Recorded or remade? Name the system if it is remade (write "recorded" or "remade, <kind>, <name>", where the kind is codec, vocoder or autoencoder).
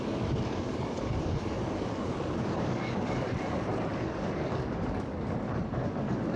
remade, codec, DAC